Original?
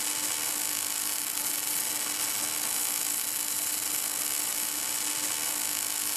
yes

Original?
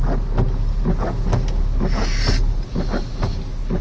yes